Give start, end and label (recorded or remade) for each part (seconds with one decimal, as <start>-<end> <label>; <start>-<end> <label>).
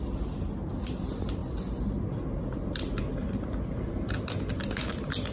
0.0-5.3 recorded